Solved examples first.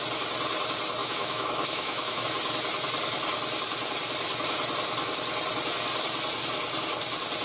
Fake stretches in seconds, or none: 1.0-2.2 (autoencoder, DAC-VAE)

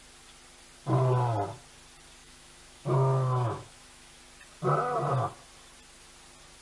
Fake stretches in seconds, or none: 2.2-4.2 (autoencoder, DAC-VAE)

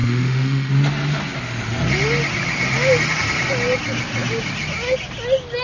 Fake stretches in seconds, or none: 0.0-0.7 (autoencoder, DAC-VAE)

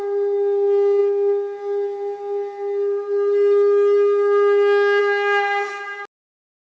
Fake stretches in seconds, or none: none